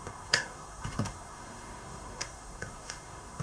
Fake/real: fake